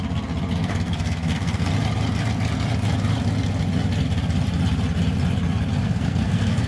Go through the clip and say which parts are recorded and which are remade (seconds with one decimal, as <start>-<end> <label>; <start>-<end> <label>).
0.0-0.6 recorded; 0.6-1.7 remade; 1.7-5.8 recorded; 5.8-6.7 remade